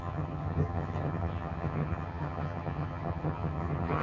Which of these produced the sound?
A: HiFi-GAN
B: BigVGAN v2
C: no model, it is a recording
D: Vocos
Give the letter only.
A